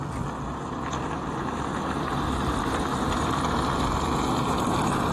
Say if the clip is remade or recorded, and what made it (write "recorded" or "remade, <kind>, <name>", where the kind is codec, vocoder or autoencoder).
recorded